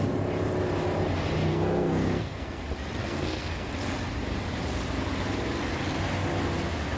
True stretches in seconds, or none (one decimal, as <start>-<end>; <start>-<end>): 0.0-1.5; 2.6-3.0; 3.7-7.0